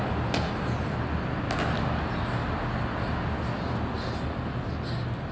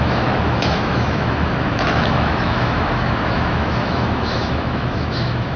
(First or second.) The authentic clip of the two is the first